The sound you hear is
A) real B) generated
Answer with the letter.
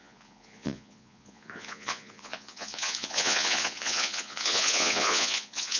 B